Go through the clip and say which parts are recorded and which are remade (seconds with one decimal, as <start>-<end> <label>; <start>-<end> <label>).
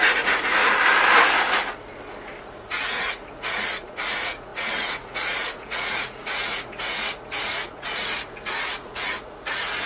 0.0-0.6 remade; 0.6-2.4 recorded; 2.4-9.9 remade